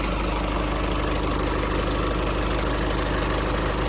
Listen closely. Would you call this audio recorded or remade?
recorded